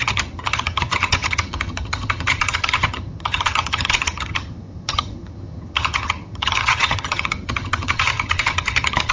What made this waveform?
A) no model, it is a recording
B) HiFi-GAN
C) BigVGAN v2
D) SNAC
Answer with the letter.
B